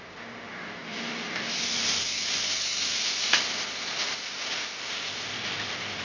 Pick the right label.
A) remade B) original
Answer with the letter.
B